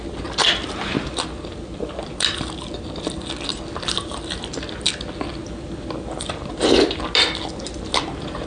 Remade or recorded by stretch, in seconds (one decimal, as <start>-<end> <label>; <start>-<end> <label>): 0.0-5.4 recorded; 5.4-6.2 remade; 6.2-8.5 recorded